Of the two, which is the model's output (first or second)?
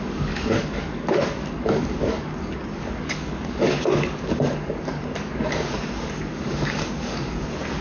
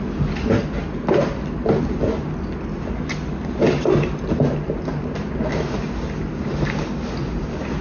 first